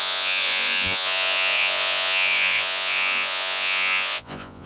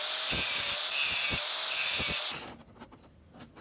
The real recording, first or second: second